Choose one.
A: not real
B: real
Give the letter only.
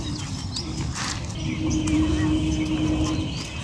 B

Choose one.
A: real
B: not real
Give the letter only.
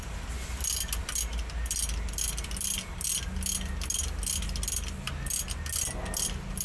A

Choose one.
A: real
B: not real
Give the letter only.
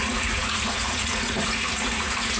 B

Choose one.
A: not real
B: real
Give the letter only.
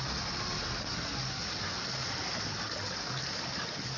B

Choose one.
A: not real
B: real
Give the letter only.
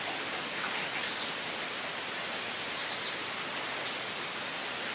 B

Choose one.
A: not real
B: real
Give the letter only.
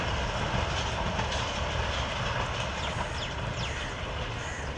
B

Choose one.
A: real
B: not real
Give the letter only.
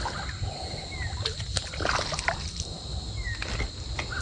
A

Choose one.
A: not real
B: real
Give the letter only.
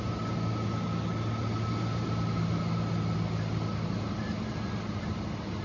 B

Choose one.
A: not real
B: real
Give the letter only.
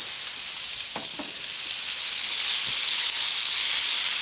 B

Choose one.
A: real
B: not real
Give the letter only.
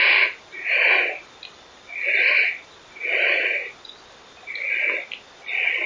A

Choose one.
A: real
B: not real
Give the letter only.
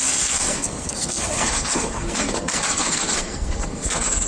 B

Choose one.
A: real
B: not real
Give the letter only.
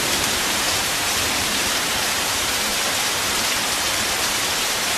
B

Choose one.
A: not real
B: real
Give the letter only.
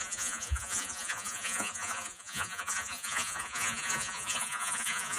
A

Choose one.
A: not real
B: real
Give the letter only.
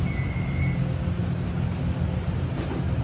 B